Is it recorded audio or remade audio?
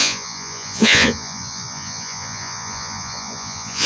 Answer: remade